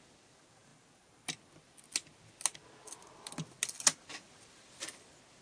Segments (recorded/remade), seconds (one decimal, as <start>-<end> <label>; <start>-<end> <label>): 0.0-5.4 recorded